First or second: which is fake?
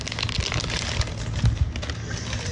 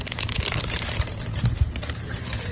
second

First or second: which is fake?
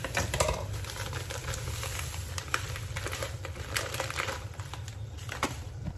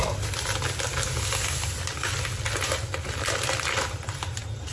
first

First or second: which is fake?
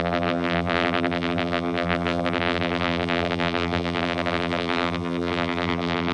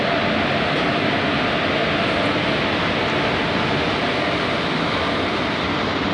first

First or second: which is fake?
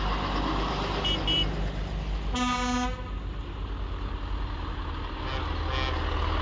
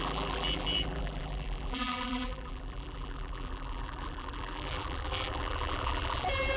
second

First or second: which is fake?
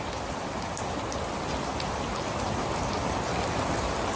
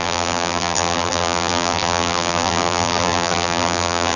second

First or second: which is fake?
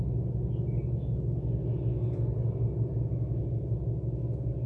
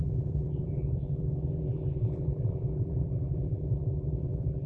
second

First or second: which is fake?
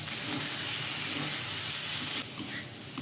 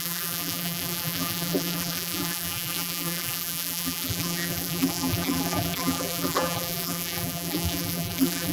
second